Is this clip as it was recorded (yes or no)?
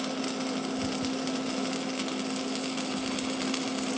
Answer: yes